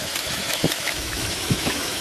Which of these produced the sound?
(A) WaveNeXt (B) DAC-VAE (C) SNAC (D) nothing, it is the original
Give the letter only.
B